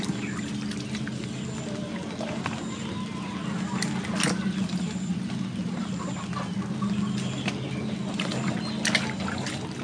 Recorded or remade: recorded